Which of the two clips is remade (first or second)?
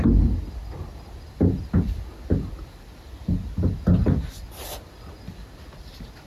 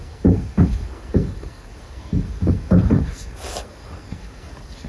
second